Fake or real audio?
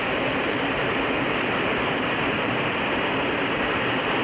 fake